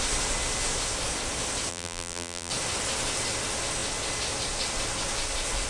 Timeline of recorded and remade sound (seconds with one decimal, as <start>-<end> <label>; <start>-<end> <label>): 0.0-1.7 recorded; 1.7-2.5 remade; 2.5-5.7 recorded